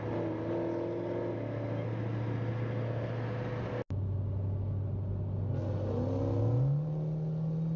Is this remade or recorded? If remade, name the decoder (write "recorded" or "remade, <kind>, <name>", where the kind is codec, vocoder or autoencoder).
recorded